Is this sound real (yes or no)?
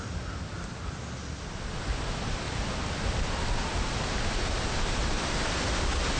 yes